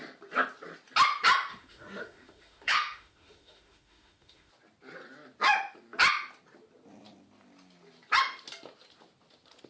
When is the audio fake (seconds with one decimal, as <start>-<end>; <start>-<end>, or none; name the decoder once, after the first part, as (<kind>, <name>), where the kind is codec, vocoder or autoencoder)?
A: 1.5-4.5 (autoencoder, DAC-VAE)